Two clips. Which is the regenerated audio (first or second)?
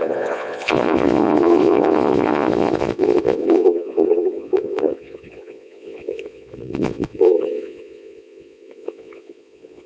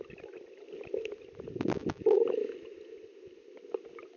first